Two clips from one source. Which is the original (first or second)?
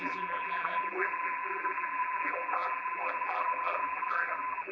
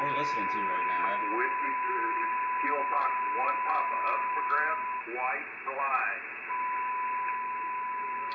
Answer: second